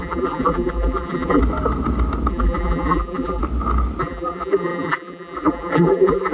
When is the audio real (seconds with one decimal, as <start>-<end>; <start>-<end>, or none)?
1.4-2.3; 3.4-4.0